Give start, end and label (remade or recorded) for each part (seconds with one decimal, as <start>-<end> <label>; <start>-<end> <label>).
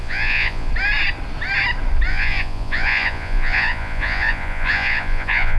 0.0-0.7 remade; 0.7-2.1 recorded; 2.1-5.6 remade